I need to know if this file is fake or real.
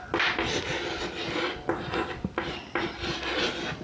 real